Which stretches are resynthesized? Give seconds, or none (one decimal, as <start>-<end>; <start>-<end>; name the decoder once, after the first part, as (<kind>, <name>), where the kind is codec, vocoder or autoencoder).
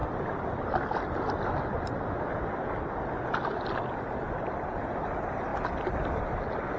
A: none